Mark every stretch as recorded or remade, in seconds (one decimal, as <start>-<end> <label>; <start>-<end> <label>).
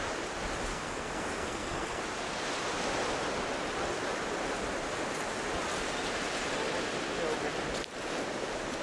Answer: 0.0-0.7 recorded; 0.7-2.0 remade; 2.0-8.8 recorded